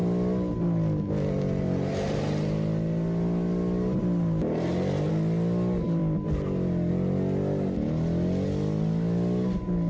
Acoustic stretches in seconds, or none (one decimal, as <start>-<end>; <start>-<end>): 0.0-9.9